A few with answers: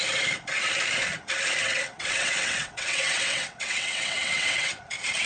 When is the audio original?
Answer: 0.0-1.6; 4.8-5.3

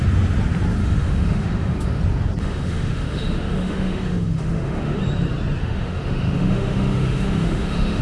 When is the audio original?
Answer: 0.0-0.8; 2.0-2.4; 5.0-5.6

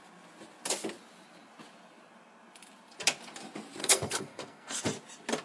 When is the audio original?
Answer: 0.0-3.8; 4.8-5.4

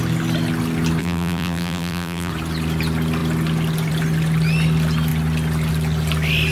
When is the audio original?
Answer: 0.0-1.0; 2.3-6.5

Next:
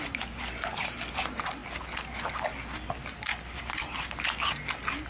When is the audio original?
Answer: 0.0-5.1

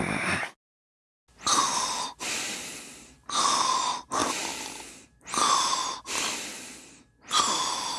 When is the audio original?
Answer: 0.0-8.0

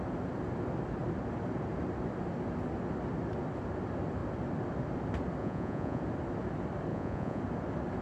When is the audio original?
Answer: 0.0-5.4; 6.0-6.9; 7.4-8.0